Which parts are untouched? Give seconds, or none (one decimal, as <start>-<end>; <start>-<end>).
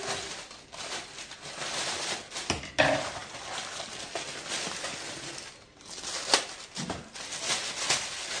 0.0-8.4